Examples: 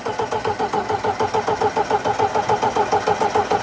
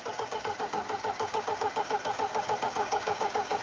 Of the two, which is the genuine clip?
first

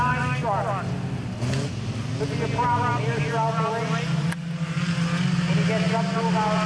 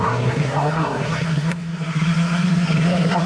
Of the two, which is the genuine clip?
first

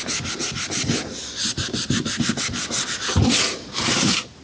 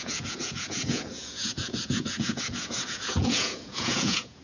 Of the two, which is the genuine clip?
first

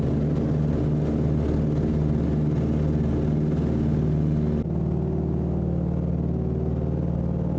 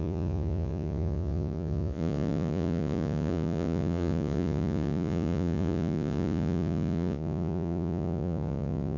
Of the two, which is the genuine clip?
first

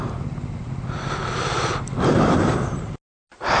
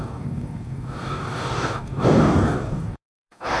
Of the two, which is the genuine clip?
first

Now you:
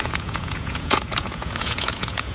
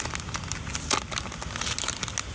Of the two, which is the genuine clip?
second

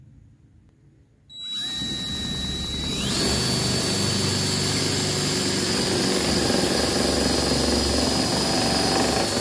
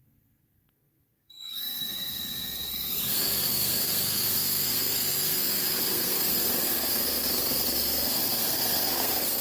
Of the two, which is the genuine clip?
first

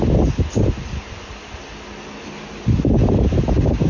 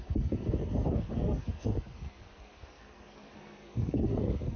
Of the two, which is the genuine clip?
first